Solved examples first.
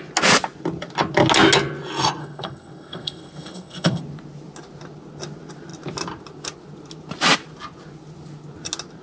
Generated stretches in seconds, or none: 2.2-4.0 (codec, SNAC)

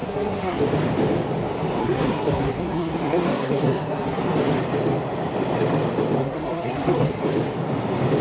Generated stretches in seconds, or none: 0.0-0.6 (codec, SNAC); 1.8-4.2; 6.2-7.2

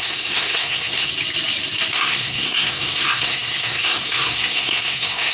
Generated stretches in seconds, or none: 0.0-1.1 (codec, SNAC); 1.9-5.3

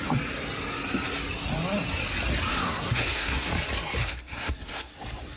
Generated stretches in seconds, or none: 2.5-3.5 (codec, SNAC); 4.0-4.9